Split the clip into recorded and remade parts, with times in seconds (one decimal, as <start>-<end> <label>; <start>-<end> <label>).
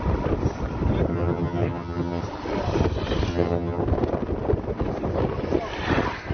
0.0-1.1 recorded; 1.1-2.2 remade; 2.2-3.3 recorded; 3.3-3.8 remade; 3.8-6.3 recorded